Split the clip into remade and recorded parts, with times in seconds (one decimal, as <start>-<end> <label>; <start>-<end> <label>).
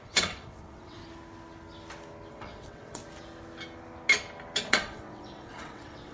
0.0-1.0 remade; 1.0-2.3 recorded; 2.3-3.0 remade; 3.0-4.7 recorded; 4.7-6.1 remade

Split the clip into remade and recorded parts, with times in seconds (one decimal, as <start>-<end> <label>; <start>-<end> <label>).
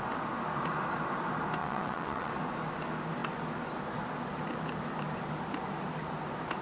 0.0-1.6 recorded; 1.6-2.3 remade; 2.3-6.6 recorded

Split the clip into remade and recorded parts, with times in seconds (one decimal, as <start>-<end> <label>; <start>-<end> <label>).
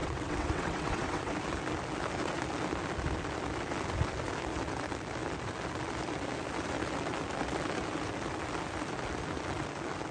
0.0-1.3 remade; 1.3-10.1 recorded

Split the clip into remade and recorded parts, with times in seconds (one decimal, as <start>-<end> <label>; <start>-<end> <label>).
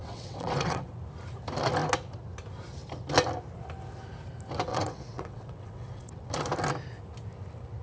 0.0-0.9 remade; 0.9-4.7 recorded; 4.7-6.3 remade; 6.3-7.8 recorded